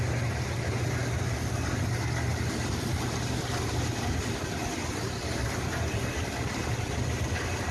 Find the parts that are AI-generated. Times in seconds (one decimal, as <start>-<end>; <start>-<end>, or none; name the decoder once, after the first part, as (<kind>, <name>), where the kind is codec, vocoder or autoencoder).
none